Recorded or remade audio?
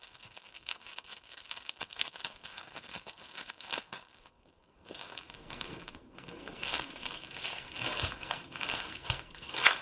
remade